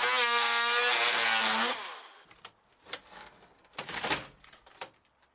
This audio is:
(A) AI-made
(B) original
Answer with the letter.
B